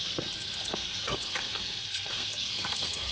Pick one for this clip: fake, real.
fake